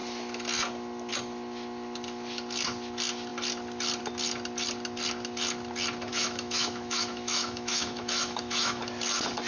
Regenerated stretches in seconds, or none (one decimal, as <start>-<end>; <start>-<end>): 6.1-8.8